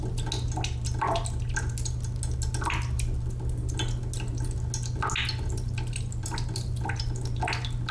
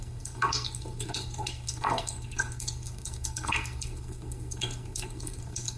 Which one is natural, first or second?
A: first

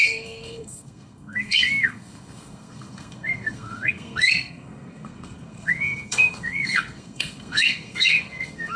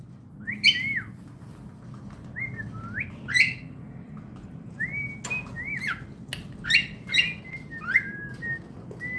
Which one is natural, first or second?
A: second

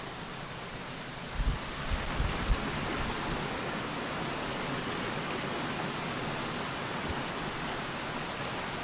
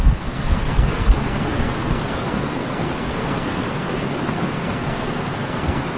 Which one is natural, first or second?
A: first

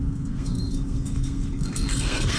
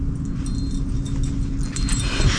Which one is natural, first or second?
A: second